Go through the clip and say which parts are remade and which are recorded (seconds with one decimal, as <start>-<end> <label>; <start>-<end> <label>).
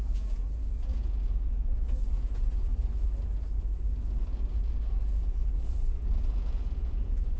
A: 0.0-2.7 remade; 2.7-4.5 recorded; 4.5-7.4 remade